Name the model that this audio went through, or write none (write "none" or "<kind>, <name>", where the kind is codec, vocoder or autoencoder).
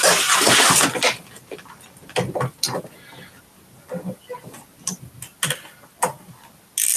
none